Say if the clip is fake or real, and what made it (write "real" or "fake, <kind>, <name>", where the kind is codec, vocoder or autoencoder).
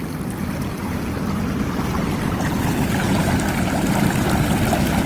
real